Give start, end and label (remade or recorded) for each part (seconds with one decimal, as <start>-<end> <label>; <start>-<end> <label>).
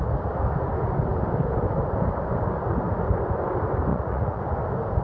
0.0-3.9 recorded; 3.9-4.4 remade; 4.4-5.0 recorded